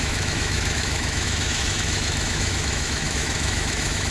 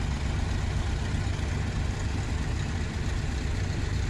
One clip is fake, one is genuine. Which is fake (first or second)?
first